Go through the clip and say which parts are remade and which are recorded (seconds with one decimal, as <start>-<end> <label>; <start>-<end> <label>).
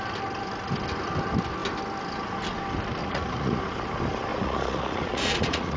0.0-3.0 recorded; 3.0-3.6 remade; 3.6-4.3 recorded; 4.3-5.8 remade